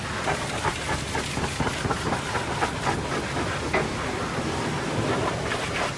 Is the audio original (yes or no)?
yes